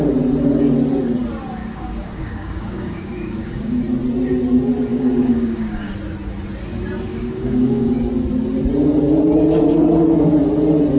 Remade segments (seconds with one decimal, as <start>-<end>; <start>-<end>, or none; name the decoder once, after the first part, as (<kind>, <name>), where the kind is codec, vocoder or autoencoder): 1.6-3.8 (codec, DAC); 4.9-5.9; 7.1-7.9